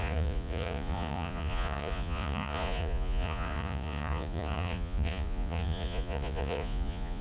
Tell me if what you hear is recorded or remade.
remade